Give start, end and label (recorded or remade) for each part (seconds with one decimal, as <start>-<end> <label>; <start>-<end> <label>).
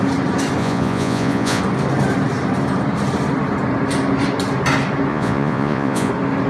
0.0-0.6 recorded; 0.6-1.6 remade; 1.6-5.1 recorded; 5.1-6.1 remade; 6.1-6.5 recorded